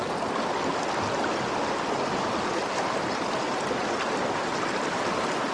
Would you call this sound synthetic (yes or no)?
no